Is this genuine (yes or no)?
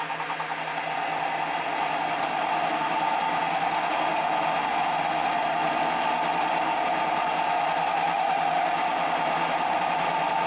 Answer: yes